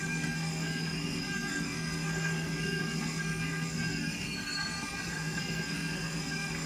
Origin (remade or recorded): remade